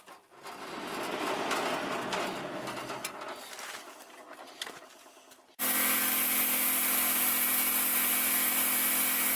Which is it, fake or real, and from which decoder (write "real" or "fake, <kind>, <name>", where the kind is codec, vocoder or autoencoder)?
real